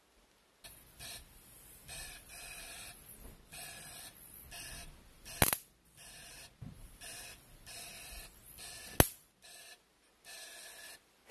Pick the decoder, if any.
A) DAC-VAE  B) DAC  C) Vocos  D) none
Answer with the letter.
D